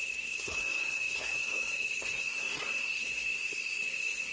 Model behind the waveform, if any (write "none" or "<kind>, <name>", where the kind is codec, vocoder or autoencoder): codec, SNAC